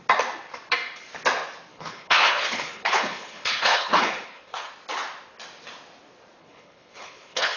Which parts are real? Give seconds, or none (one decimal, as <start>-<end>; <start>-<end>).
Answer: 0.0-1.7; 4.7-6.4